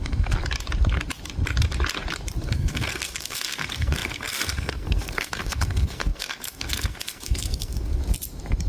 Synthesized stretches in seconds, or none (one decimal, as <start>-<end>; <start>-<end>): 0.0-0.4; 2.4-8.0